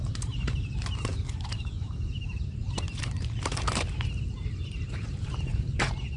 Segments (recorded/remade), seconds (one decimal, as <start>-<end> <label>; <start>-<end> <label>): 0.0-6.2 remade